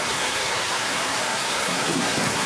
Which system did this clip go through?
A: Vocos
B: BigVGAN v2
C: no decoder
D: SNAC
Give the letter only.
D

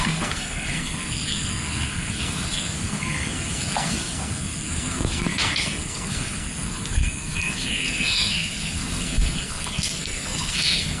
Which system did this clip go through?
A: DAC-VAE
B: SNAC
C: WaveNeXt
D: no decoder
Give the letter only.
B